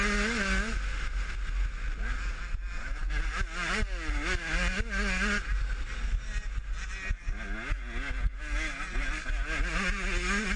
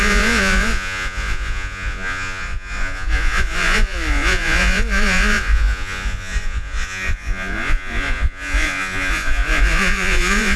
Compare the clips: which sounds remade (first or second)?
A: second